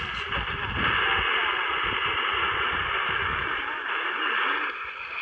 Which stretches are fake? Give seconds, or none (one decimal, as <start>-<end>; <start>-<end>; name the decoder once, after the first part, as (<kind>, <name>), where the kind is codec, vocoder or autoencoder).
1.3-3.6 (vocoder, BigVGAN v2)